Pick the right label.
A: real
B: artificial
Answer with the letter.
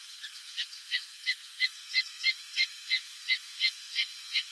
B